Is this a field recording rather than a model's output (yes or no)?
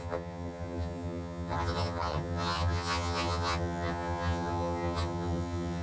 no